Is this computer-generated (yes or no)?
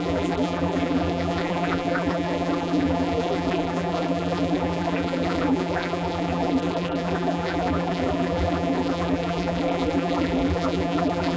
yes